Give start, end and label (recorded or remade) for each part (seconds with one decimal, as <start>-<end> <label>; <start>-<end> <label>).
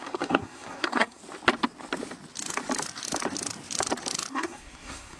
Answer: 0.0-1.2 remade; 1.2-4.3 recorded; 4.3-5.2 remade